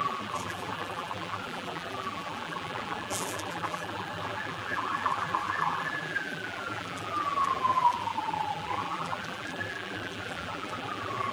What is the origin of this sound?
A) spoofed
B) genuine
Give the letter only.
A